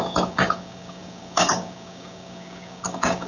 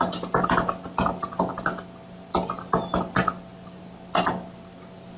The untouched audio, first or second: second